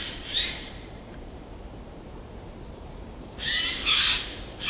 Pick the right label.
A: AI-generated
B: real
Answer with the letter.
A